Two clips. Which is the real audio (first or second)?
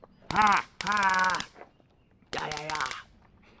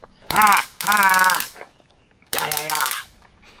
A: first